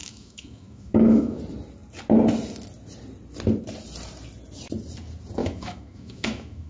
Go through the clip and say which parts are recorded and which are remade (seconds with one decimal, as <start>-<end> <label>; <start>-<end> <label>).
0.0-1.4 remade; 1.4-5.4 recorded; 5.4-6.7 remade

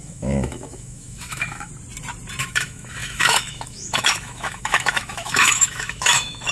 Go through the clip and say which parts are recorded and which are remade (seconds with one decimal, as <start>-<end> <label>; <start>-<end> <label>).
0.0-1.7 remade; 1.7-2.4 recorded; 2.4-6.5 remade

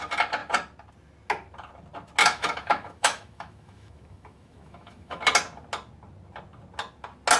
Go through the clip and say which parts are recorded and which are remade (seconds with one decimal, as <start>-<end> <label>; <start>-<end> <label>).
0.0-2.2 recorded; 2.2-5.2 remade; 5.2-7.4 recorded

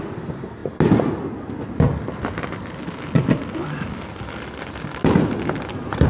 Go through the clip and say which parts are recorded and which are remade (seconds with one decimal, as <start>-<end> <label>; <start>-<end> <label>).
0.0-6.1 recorded

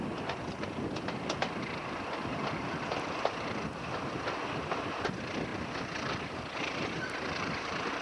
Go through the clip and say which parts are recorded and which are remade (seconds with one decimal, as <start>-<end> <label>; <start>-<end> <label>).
0.0-8.0 recorded

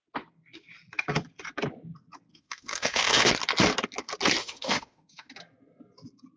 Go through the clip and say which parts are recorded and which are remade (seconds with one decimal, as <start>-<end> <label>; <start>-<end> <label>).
0.0-2.3 recorded; 2.3-3.3 remade; 3.3-4.4 recorded; 4.4-5.3 remade; 5.3-6.4 recorded

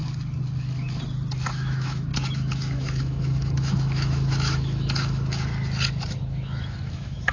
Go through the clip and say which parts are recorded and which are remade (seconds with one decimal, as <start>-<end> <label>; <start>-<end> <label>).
0.0-1.5 recorded; 1.5-5.5 remade; 5.5-6.2 recorded; 6.2-7.3 remade